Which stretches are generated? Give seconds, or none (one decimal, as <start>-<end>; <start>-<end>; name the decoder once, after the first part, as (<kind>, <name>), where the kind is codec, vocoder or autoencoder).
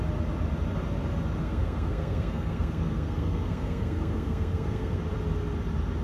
1.4-5.0 (codec, SNAC)